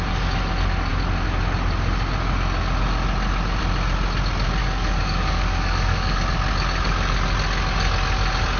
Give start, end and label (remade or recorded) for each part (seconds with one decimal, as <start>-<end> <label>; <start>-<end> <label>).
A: 0.0-4.6 recorded; 4.6-6.2 remade; 6.2-8.6 recorded

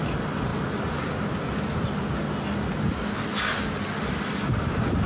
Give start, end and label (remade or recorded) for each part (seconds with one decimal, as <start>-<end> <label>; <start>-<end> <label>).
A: 0.0-5.1 recorded

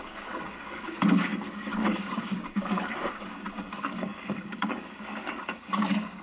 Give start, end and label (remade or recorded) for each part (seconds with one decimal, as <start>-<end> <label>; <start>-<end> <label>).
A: 0.0-6.2 remade

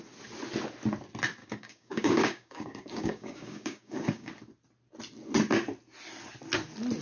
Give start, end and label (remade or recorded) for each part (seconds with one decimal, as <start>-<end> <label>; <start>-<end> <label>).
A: 0.0-1.4 recorded; 1.4-4.3 remade; 4.3-7.0 recorded

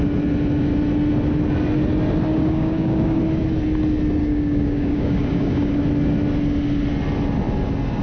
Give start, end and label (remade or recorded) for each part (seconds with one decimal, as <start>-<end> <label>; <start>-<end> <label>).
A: 0.0-2.3 recorded; 2.3-3.2 remade; 3.2-4.2 recorded; 4.2-5.8 remade; 5.8-8.0 recorded

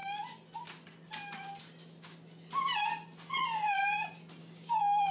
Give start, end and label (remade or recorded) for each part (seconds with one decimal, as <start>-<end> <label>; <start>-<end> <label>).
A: 0.0-4.4 recorded; 4.4-5.1 remade

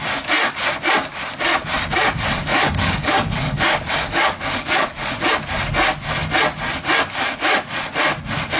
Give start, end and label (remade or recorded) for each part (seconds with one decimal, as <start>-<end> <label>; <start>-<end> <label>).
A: 0.0-2.5 recorded; 2.5-5.3 remade; 5.3-8.6 recorded